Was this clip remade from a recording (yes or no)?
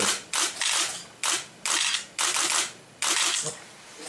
no